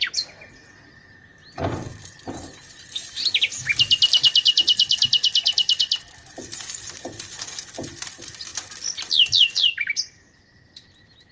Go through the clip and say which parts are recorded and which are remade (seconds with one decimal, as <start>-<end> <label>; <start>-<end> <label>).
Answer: 0.0-11.3 recorded